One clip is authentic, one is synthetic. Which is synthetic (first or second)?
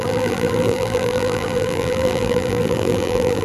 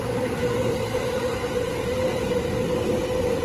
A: first